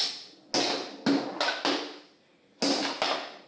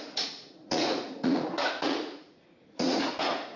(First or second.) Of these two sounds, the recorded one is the first